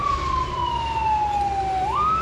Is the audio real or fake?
real